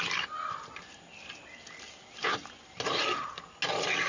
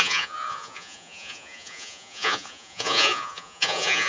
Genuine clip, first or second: first